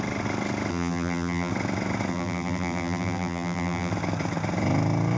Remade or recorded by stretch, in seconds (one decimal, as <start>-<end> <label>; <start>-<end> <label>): 0.0-0.7 recorded; 0.7-1.5 remade; 1.5-2.1 recorded; 2.1-3.9 remade; 3.9-5.2 recorded